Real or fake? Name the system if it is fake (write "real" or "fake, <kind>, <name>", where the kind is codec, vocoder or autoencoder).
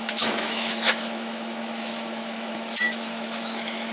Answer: fake, autoencoder, DAC-VAE